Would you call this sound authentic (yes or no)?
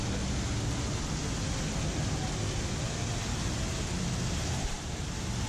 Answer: yes